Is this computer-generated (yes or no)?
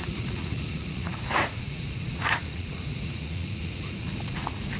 yes